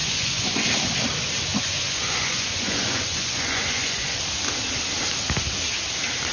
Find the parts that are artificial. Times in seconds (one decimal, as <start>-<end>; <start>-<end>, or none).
0.0-0.6; 1.5-4.2